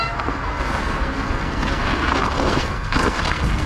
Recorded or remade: remade